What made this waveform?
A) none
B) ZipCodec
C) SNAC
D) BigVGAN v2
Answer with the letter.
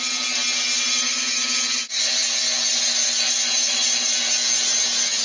A